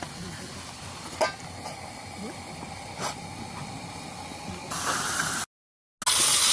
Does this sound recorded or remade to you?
recorded